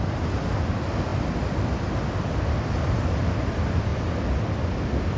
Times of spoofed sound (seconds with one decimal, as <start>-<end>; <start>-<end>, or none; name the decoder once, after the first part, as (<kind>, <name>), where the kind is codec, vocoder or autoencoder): none